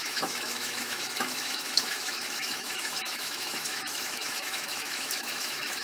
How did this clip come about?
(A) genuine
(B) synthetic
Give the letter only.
B